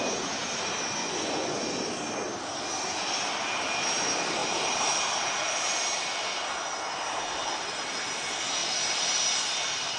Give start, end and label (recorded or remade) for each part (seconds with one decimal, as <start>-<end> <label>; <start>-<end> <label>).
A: 0.0-1.0 recorded; 1.0-1.6 remade; 1.6-10.0 recorded